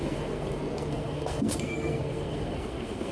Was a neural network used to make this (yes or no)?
yes